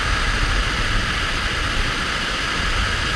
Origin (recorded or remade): recorded